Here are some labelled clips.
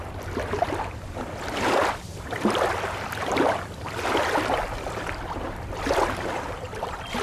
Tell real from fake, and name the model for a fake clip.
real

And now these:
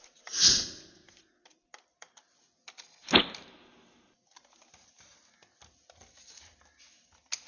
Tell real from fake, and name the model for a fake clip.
real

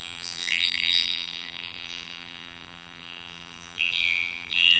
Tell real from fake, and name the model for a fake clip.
fake, vocoder, BigVGAN v2